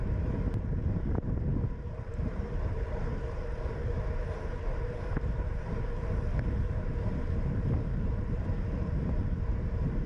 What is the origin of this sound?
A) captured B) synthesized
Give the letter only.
B